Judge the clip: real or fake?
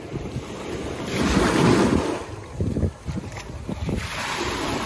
real